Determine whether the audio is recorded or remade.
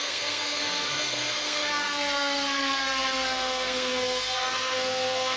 remade